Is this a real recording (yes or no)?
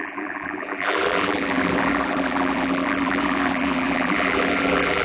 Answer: no